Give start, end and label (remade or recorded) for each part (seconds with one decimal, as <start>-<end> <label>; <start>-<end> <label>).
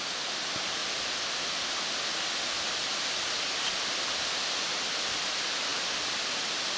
0.0-6.8 recorded